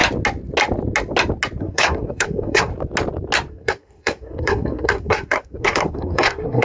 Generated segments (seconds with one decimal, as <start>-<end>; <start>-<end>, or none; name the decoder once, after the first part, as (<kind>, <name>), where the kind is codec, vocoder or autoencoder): 1.6-2.7 (codec, SNAC); 3.5-6.6